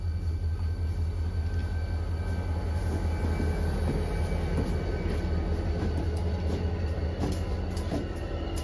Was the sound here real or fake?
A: real